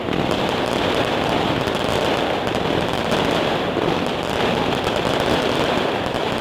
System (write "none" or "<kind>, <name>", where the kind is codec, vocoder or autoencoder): vocoder, BigVGAN v2